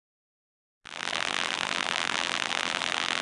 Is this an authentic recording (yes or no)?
no